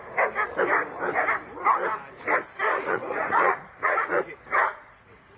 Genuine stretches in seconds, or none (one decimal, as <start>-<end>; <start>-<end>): 0.0-2.7